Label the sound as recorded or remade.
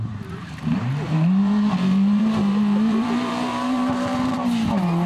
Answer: remade